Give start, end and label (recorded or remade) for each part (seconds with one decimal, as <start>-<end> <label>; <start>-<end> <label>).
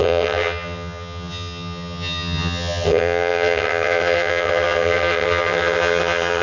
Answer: 0.0-6.4 remade